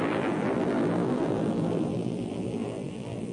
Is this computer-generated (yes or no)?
yes